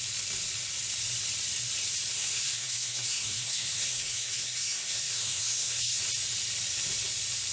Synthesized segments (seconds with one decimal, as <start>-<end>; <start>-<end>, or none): 2.1-6.0